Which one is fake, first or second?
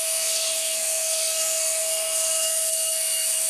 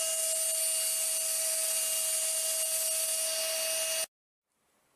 first